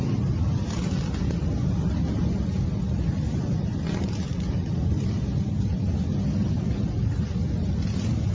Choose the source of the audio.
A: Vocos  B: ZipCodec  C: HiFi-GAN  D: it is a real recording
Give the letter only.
D